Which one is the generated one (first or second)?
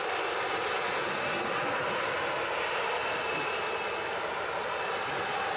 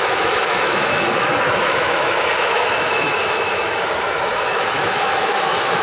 second